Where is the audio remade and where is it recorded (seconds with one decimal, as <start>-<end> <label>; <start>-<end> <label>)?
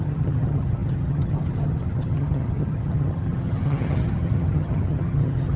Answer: 0.0-5.6 remade